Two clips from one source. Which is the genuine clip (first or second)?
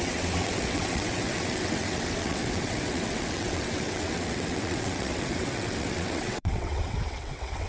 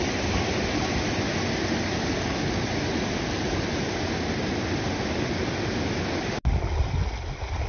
second